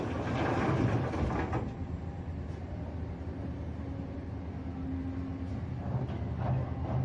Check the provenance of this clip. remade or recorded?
recorded